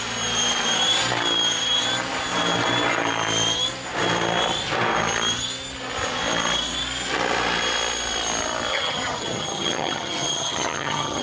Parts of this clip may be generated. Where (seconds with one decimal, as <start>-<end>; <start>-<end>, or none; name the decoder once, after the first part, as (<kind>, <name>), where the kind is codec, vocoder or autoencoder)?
8.7-11.2 (vocoder, HiFi-GAN)

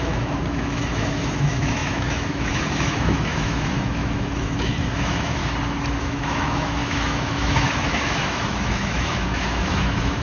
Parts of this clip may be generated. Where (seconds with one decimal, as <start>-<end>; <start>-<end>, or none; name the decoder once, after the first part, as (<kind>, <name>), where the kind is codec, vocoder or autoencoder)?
0.0-5.4 (autoencoder, DAC-VAE); 6.0-10.2

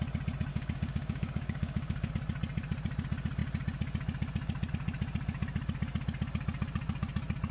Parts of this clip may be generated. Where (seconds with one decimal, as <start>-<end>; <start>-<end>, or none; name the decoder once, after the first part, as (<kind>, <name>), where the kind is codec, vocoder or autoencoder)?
0.5-2.1 (codec, DAC)